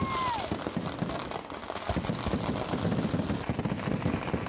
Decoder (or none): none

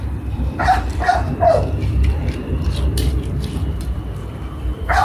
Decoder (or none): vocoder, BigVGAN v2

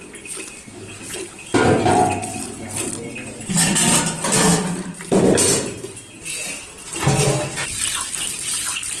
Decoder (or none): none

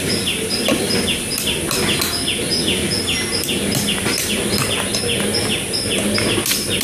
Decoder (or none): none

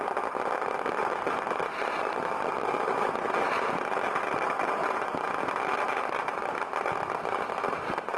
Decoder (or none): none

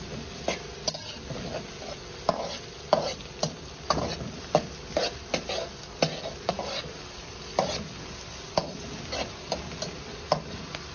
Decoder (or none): none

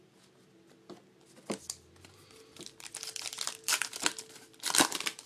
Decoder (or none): vocoder, BigVGAN v2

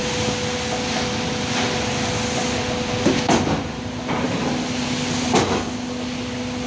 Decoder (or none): none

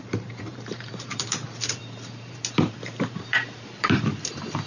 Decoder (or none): vocoder, BigVGAN v2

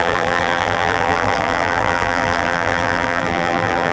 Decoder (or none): vocoder, BigVGAN v2